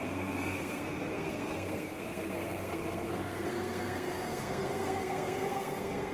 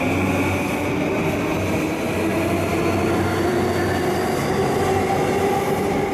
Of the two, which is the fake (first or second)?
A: first